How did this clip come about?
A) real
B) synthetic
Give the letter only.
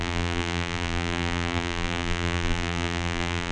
B